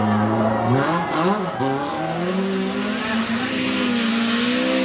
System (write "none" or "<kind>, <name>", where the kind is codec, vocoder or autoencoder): none